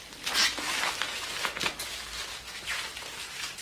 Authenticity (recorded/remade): recorded